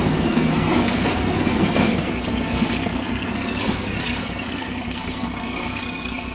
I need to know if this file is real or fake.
fake